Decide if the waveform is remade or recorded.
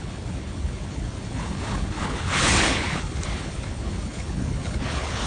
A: remade